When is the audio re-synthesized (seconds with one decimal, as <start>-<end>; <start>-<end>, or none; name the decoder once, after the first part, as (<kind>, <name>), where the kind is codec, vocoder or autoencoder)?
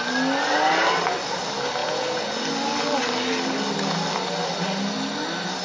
1.8-2.4 (vocoder, Vocos)